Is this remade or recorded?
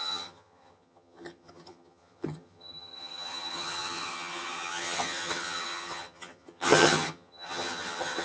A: remade